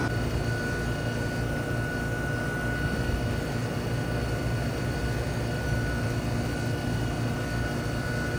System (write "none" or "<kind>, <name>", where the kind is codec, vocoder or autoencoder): none